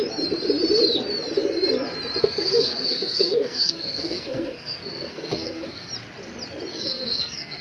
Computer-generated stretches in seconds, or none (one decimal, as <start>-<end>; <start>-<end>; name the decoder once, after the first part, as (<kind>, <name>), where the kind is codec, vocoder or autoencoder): 2.2-5.9 (codec, SNAC); 6.7-7.6